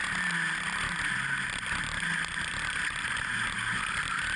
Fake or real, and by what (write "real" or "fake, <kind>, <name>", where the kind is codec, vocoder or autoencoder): real